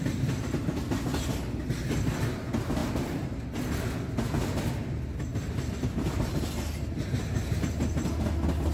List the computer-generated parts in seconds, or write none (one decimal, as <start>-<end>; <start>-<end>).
2.8-3.4